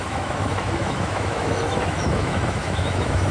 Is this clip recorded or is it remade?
remade